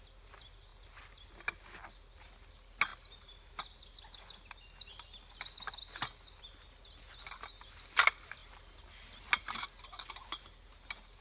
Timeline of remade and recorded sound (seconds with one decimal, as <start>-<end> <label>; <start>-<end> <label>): 0.0-11.2 recorded